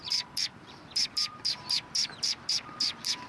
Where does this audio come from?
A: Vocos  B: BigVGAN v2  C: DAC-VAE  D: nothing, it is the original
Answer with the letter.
B